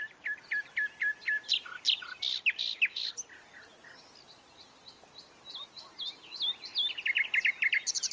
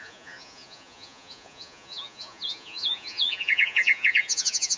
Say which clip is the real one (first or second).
first